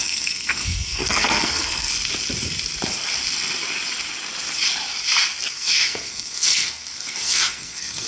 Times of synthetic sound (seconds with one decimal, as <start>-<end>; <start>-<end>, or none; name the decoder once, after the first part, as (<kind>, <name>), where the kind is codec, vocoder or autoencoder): 0.0-1.9 (codec, SNAC); 5.5-8.1